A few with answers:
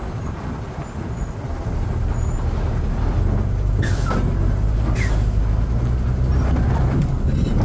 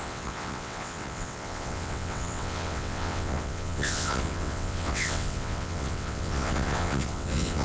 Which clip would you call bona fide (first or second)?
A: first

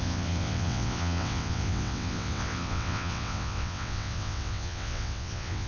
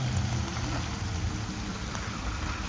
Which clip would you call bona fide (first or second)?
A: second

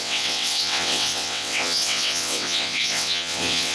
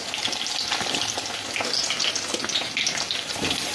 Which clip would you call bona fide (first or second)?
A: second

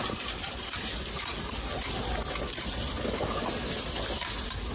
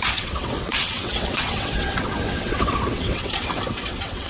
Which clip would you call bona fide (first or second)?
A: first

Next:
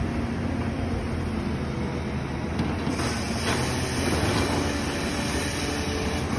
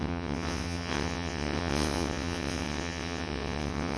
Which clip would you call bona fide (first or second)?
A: first